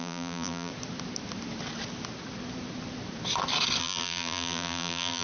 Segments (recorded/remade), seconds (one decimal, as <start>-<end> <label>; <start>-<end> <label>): 0.0-0.7 remade; 0.7-3.8 recorded; 3.8-5.2 remade